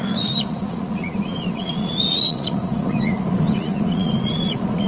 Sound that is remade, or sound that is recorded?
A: remade